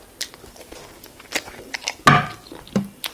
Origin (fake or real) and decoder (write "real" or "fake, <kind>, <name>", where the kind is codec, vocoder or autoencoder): real